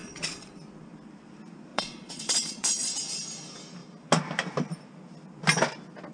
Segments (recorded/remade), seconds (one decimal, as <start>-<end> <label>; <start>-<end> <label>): 0.0-0.5 remade; 0.5-1.7 recorded; 1.7-2.9 remade; 2.9-6.1 recorded